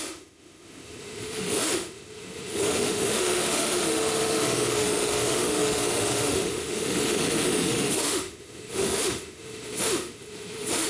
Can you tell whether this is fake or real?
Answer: fake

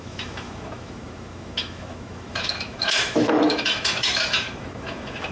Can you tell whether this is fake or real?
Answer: fake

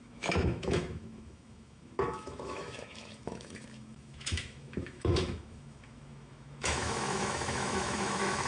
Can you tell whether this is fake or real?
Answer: fake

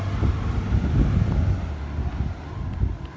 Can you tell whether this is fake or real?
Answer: real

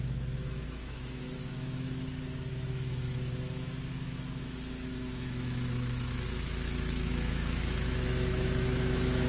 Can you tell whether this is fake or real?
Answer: fake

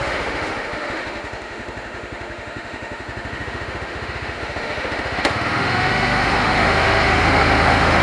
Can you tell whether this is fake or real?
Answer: fake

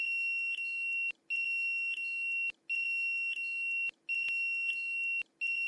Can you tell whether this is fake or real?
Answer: real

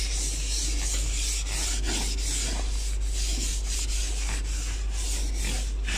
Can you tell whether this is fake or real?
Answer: real